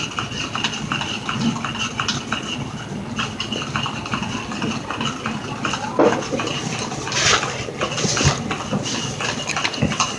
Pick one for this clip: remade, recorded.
recorded